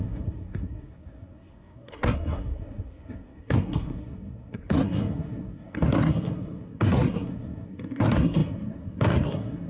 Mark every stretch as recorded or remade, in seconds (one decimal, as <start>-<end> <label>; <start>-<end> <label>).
0.0-9.7 remade